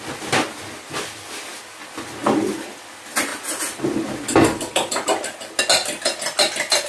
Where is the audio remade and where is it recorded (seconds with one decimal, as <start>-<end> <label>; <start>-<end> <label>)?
0.0-6.9 recorded